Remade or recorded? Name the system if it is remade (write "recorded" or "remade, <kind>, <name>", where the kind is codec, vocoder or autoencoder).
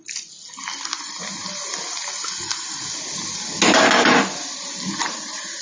recorded